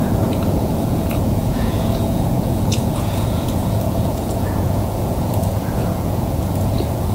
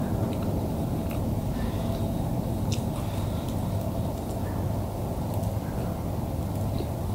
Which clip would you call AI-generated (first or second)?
first